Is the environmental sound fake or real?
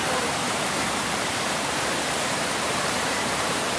fake